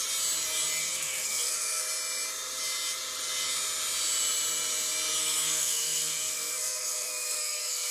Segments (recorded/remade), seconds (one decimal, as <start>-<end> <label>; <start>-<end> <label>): 0.0-0.8 recorded; 0.8-1.8 remade; 1.8-5.2 recorded; 5.2-7.9 remade